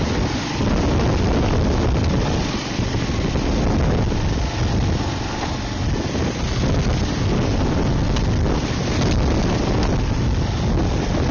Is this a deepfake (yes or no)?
no